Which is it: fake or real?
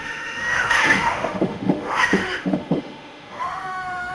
fake